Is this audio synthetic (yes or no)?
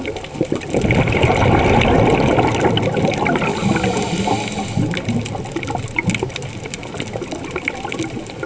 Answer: no